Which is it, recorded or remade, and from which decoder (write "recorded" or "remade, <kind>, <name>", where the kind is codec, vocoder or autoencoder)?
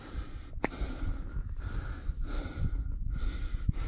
recorded